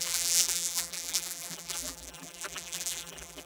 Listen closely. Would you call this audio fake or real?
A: fake